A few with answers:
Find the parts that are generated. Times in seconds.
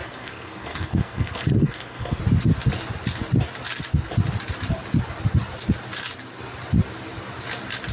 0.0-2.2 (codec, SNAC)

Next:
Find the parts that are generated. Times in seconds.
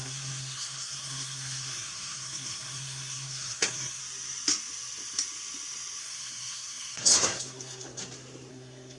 0.0-4.0 (codec, SNAC); 6.0-8.0; 8.5-9.0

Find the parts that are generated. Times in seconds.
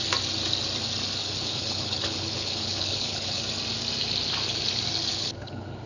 1.2-3.4 (codec, HILCodec); 5.1-5.9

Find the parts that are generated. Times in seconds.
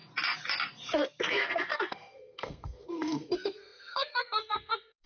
1.2-5.1 (codec, SNAC)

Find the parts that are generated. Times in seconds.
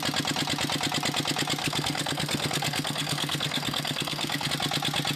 1.6-4.5 (codec, SNAC)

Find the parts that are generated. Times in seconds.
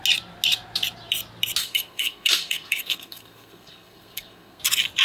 1.6-4.6 (codec, SNAC)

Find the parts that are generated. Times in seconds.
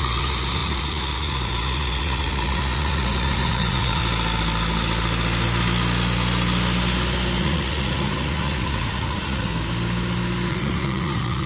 0.0-4.0 (vocoder, Vocos); 7.4-9.5; 10.5-11.5